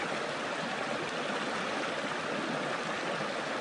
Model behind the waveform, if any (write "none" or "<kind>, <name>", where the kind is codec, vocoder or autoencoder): none